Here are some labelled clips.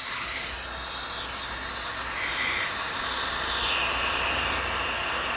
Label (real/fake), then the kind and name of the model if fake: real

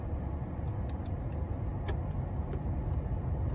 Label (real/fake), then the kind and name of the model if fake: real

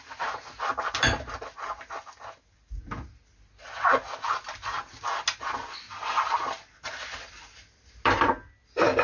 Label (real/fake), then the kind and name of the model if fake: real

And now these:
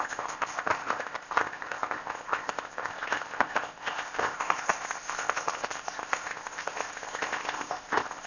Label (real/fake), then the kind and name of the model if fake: fake, codec, ZipCodec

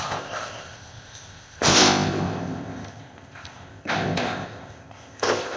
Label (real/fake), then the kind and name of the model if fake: fake, codec, ZipCodec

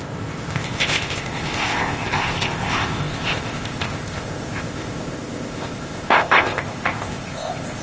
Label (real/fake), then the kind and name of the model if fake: fake, codec, ZipCodec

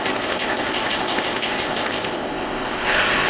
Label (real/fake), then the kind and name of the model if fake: fake, codec, ZipCodec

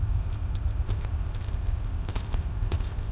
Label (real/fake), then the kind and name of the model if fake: fake, codec, ZipCodec